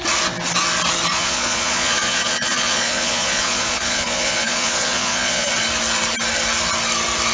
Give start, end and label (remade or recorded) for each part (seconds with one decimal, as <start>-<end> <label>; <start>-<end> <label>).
0.0-1.1 recorded; 1.1-5.5 remade; 5.5-7.3 recorded